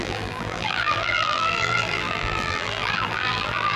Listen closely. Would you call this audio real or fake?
fake